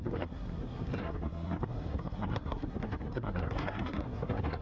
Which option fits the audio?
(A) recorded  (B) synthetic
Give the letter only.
B